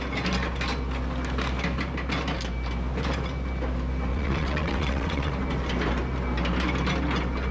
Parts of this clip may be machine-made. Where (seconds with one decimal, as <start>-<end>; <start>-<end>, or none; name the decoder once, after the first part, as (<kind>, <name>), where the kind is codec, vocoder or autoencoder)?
4.1-5.3 (vocoder, WaveNeXt)